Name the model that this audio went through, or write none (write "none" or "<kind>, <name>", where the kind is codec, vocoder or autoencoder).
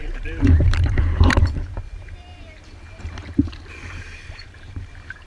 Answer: vocoder, BigVGAN v2